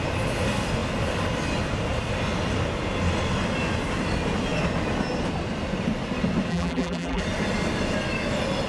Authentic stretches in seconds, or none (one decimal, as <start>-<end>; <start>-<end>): 0.0-6.5; 7.2-8.7